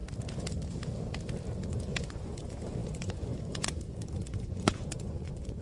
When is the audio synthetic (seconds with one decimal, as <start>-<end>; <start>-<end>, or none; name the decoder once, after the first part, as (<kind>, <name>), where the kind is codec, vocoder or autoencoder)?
1.7-5.6 (vocoder, Vocos)